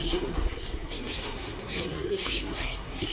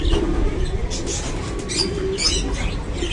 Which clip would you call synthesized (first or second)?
first